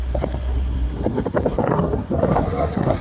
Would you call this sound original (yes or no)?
no